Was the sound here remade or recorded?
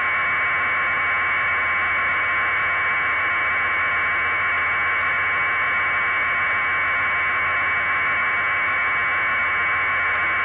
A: recorded